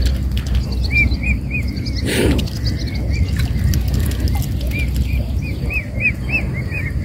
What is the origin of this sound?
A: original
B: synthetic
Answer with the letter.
A